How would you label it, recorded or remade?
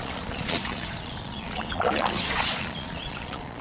remade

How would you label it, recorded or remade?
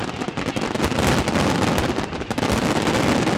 recorded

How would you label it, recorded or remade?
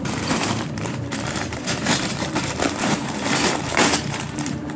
remade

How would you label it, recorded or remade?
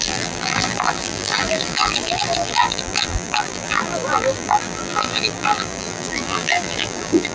remade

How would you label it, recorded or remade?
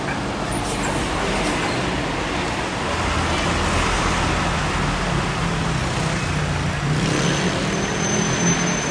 recorded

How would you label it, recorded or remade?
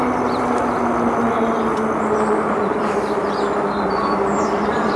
recorded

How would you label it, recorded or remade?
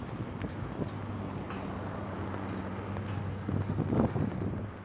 recorded